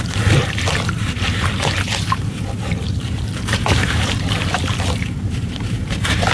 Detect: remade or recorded remade